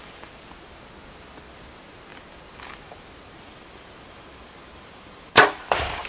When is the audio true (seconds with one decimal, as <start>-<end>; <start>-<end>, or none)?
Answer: 0.0-6.1